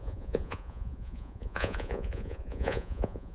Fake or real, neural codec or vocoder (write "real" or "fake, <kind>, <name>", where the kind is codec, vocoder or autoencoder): fake, vocoder, Vocos